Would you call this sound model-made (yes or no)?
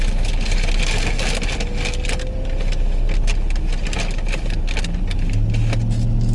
no